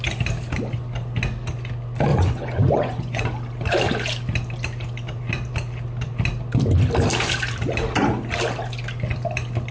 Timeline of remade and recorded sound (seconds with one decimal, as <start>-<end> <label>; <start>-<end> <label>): 0.0-2.1 recorded; 2.1-3.2 remade; 3.2-9.7 recorded